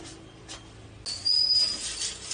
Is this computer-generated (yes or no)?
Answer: no